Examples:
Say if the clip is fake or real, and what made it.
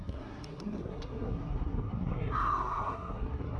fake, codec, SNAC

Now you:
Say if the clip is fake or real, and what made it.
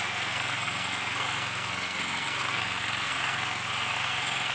fake, codec, SNAC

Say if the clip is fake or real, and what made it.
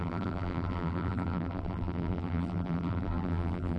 fake, vocoder, BigVGAN v2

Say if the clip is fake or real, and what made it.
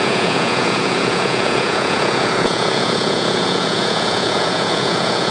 fake, vocoder, Vocos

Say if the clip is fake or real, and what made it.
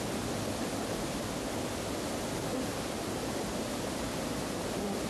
real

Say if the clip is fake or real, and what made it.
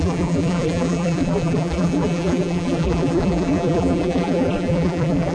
fake, vocoder, BigVGAN v2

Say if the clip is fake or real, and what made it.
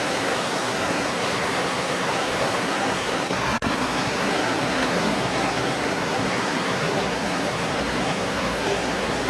fake, codec, SNAC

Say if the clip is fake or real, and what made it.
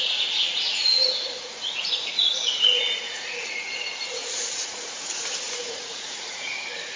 fake, vocoder, Vocos